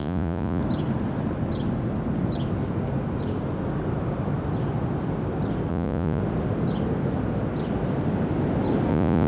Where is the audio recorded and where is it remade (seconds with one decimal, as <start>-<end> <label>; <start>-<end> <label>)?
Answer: 0.0-0.6 remade; 0.6-5.7 recorded; 5.7-6.2 remade; 6.2-8.9 recorded; 8.9-9.3 remade